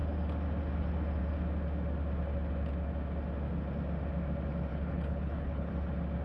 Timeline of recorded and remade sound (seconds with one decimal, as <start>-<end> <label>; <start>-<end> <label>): 0.0-4.7 recorded; 4.7-5.7 remade; 5.7-6.2 recorded